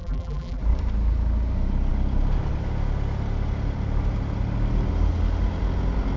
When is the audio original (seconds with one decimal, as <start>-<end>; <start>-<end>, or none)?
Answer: 0.6-6.2